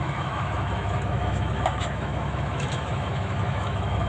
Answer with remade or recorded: remade